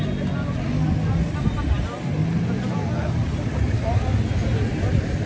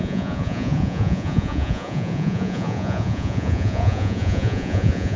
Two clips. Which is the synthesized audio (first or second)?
second